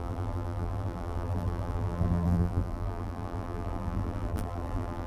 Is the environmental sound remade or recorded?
remade